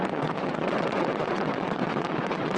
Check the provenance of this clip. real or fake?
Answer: fake